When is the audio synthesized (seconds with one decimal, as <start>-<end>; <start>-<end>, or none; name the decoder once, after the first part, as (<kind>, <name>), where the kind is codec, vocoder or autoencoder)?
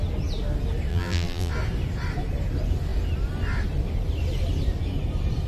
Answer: 0.9-1.5 (vocoder, BigVGAN v2)